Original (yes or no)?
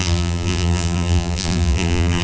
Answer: no